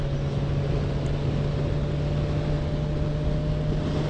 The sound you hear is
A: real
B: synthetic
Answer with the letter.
A